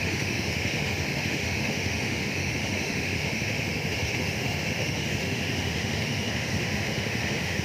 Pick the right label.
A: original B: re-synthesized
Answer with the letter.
B